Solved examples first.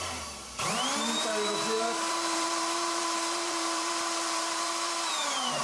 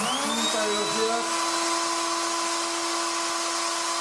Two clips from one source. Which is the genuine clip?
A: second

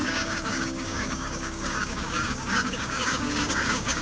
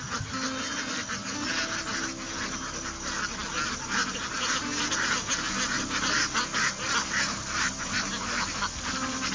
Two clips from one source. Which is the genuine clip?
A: second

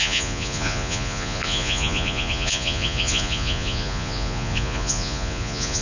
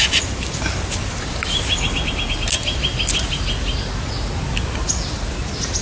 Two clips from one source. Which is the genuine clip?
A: second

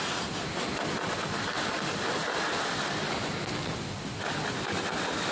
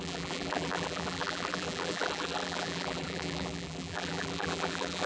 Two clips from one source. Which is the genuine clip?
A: first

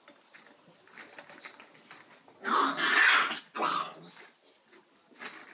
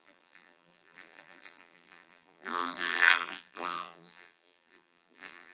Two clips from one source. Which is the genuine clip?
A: first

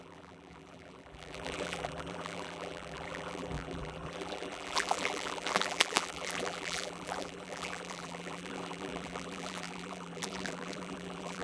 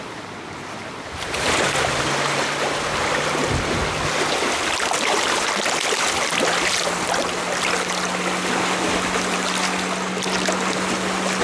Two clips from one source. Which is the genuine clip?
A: second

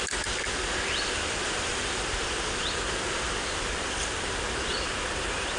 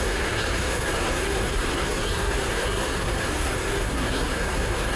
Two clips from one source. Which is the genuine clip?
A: first